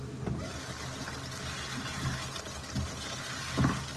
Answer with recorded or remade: recorded